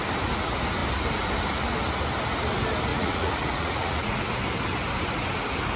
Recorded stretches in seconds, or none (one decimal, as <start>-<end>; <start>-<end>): 0.0-2.9; 4.2-5.8